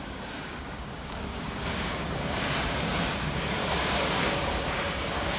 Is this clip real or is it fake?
fake